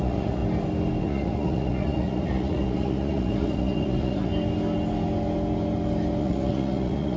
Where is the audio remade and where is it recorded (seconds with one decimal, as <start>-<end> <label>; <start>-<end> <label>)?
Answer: 0.0-0.4 remade; 0.4-1.0 recorded; 1.0-4.3 remade; 4.3-6.2 recorded; 6.2-7.2 remade